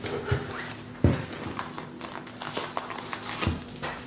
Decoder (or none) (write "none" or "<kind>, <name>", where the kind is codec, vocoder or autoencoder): none